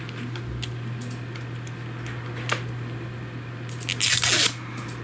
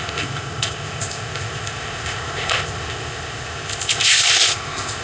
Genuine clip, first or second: first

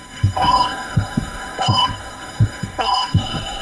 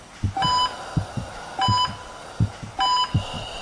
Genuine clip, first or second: second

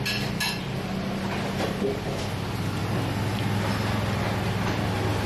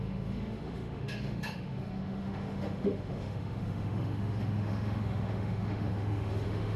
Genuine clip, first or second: first